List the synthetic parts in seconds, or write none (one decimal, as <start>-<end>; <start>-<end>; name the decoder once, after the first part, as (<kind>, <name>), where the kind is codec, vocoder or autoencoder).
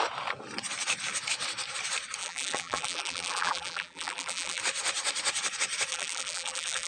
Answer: 2.2-4.6 (vocoder, BigVGAN v2); 5.9-6.9